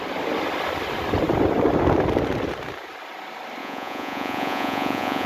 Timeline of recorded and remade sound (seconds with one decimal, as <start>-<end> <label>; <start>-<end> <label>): 0.0-3.6 recorded; 3.6-5.3 remade

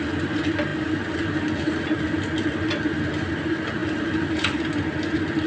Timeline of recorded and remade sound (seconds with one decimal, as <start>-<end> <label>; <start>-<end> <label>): 0.0-5.5 recorded

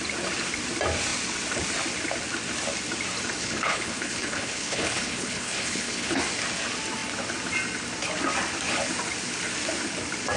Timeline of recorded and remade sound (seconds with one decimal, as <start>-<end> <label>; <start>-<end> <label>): 0.0-3.4 recorded; 3.4-6.2 remade; 6.2-10.4 recorded

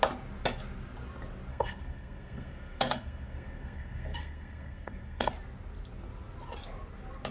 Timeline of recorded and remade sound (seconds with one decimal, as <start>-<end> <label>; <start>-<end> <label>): 0.0-1.5 recorded; 1.5-5.3 remade; 5.3-7.3 recorded

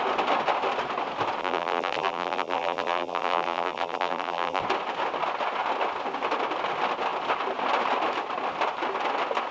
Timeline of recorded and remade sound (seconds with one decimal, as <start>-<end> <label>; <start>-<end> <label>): 0.0-1.4 recorded; 1.4-4.6 remade; 4.6-9.5 recorded

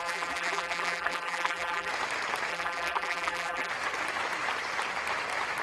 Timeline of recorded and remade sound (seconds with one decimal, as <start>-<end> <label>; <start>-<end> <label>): 0.0-1.9 remade; 1.9-2.5 recorded; 2.5-3.7 remade; 3.7-5.6 recorded

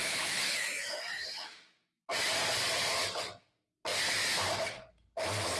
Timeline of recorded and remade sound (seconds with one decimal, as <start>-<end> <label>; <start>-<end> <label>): 0.0-2.1 remade; 2.1-5.6 recorded

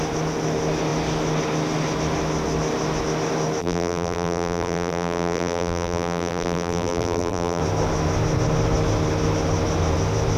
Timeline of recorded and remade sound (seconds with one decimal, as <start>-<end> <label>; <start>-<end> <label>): 0.0-3.6 recorded; 3.6-7.6 remade; 7.6-10.4 recorded